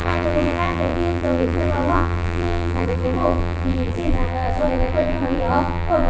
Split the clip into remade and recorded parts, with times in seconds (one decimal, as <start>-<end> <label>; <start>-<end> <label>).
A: 0.0-6.1 remade